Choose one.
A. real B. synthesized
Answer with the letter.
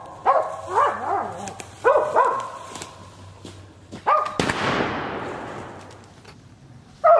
A